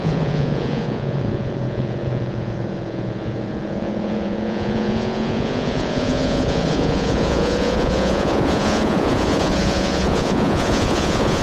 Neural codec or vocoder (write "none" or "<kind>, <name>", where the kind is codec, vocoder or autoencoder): vocoder, Vocos